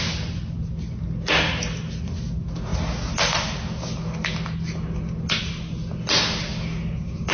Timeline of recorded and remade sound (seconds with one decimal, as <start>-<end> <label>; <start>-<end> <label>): 0.0-7.3 recorded